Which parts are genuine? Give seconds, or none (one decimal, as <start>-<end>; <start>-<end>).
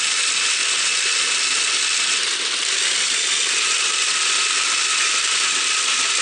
0.6-3.9